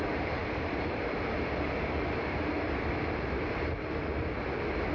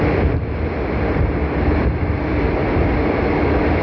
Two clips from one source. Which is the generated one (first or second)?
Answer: first